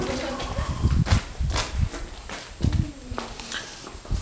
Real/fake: real